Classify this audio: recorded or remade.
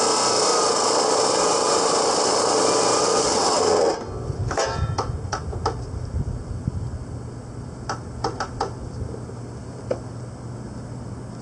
recorded